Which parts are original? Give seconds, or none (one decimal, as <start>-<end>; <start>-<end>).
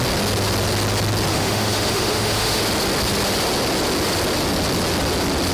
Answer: 0.0-1.3; 2.6-5.5